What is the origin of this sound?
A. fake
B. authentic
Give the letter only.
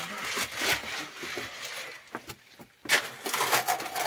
B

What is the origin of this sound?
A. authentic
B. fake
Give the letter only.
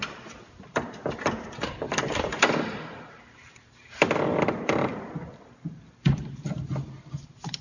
B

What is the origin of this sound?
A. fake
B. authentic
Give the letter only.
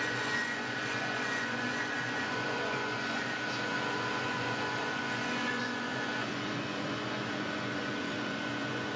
A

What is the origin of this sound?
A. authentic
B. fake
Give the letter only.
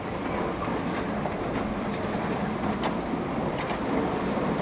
A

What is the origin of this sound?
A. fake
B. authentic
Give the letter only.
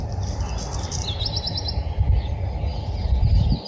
B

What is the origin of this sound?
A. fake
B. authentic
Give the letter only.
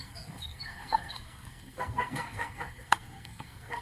A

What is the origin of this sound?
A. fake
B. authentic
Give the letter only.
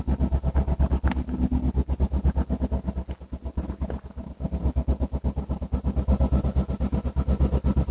B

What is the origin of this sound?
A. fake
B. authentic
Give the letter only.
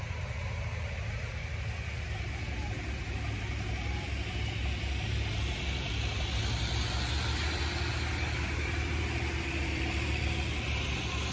B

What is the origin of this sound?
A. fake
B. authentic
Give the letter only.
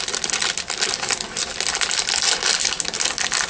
B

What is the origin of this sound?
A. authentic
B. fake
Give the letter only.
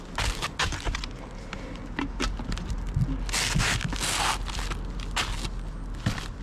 A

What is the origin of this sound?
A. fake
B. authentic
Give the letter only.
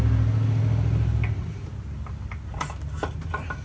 B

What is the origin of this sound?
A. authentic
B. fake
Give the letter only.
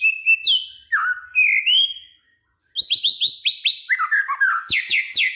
A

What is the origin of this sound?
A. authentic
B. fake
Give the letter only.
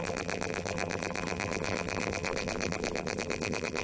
B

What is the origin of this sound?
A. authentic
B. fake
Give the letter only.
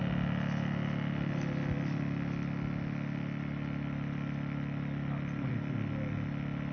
A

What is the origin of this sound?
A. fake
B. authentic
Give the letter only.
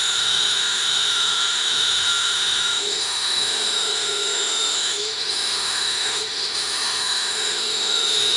A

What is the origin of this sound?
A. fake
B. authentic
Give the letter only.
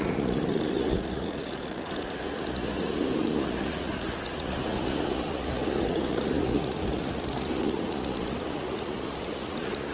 A